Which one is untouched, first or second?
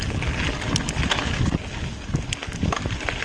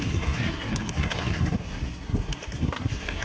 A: first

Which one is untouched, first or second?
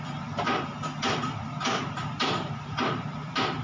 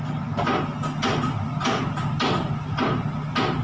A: second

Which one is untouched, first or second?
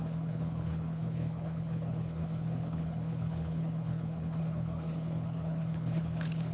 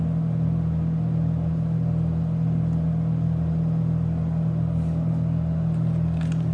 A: second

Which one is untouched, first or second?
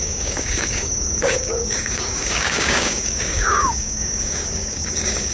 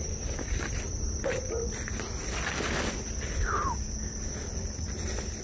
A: second